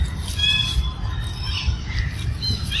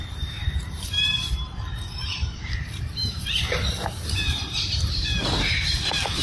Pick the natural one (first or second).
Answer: first